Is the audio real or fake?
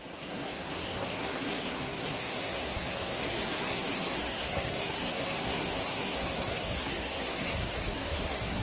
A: fake